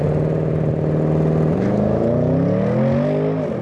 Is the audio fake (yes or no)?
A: no